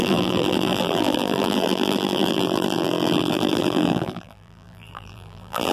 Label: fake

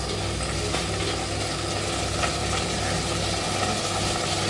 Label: real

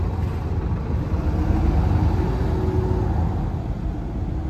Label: real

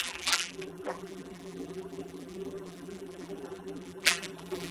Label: fake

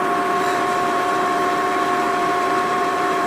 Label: fake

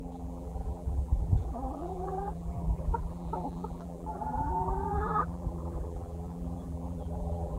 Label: fake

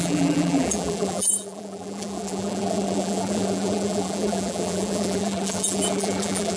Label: fake